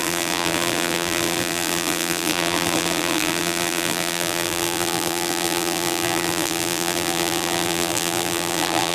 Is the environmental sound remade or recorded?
remade